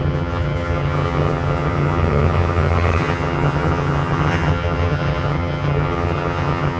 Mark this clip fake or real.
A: fake